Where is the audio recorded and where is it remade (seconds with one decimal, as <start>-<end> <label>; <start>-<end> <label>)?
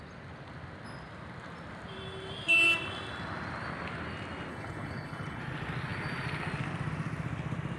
0.0-4.5 recorded; 4.5-5.4 remade; 5.4-7.8 recorded